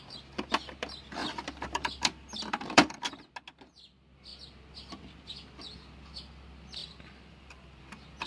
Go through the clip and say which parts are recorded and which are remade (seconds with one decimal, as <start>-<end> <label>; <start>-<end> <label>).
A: 0.0-1.2 recorded; 1.2-3.0 remade; 3.0-6.8 recorded; 6.8-7.8 remade; 7.8-8.3 recorded